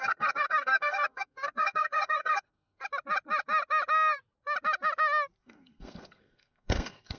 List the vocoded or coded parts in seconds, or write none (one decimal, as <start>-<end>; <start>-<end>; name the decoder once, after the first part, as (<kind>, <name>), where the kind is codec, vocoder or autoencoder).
0.0-2.8 (codec, SNAC); 5.4-7.2